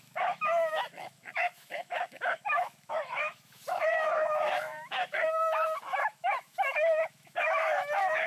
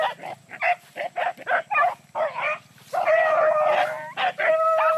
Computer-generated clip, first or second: first